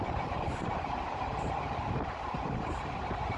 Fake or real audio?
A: fake